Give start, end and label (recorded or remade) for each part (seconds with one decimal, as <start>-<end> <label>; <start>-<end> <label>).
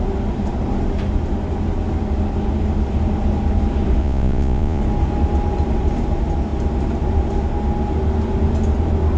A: 0.0-4.0 recorded; 4.0-4.8 remade; 4.8-9.2 recorded